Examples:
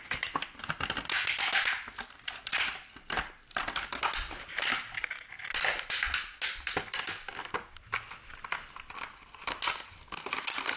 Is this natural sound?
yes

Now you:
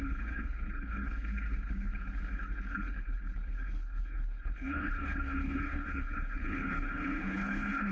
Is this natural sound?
no